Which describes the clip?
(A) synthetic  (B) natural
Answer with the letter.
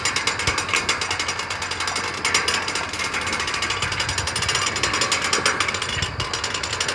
B